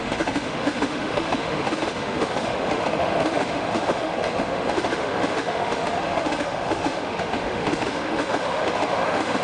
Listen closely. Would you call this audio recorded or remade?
remade